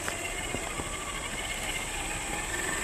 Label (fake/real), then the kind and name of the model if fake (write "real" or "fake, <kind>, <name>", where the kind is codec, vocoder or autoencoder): real